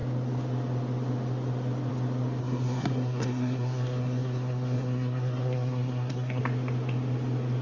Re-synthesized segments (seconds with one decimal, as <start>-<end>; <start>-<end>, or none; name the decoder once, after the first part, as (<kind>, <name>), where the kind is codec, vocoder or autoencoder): 2.4-6.4 (codec, SNAC)